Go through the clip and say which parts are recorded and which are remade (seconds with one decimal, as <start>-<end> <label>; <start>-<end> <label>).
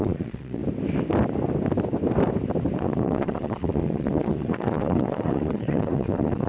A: 0.0-0.6 remade; 0.6-2.8 recorded; 2.8-6.5 remade